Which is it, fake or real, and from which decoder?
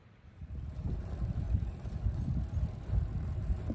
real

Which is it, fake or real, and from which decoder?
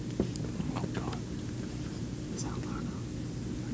real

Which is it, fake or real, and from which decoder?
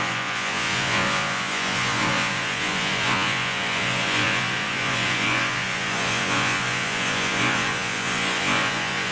fake, vocoder, Vocos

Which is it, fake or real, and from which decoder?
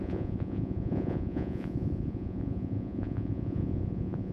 fake, vocoder, Vocos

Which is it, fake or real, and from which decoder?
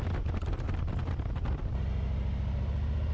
real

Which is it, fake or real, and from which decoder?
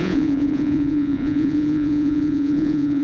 fake, vocoder, Vocos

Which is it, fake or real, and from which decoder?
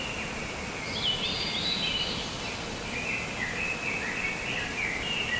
real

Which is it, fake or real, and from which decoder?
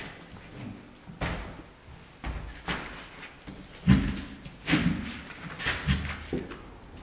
real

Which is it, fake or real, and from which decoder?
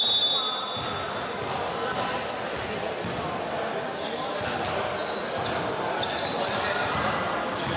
real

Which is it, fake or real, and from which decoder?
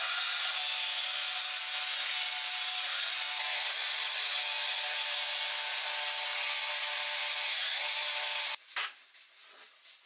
real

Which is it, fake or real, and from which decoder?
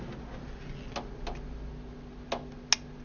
real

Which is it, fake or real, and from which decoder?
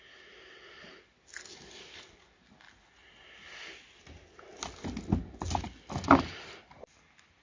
real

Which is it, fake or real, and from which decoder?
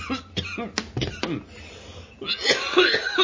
real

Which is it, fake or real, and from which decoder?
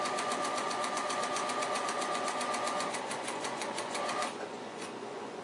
fake, vocoder, Vocos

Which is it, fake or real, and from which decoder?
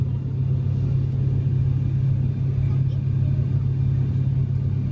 real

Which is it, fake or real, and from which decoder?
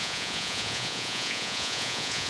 fake, vocoder, Vocos